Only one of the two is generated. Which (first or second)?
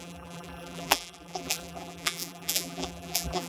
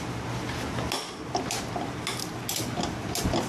first